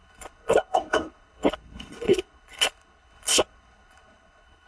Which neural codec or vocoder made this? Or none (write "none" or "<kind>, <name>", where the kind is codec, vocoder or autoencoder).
codec, HILCodec